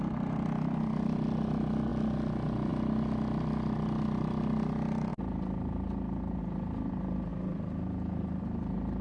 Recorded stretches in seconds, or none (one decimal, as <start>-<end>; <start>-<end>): 0.0-9.0